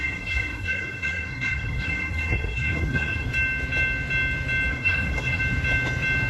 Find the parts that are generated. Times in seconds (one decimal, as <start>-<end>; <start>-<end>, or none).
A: 0.0-3.3; 4.7-5.4

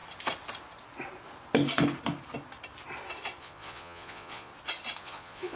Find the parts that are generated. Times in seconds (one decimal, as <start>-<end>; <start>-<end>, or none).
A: 3.4-4.5; 5.0-5.6

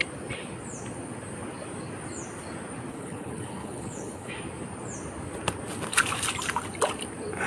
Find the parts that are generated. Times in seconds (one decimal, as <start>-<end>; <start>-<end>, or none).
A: 2.9-4.3